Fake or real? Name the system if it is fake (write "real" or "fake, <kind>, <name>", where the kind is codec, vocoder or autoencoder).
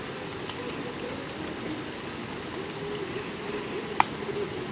real